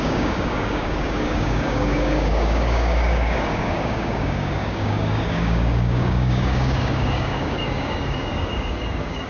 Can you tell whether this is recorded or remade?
remade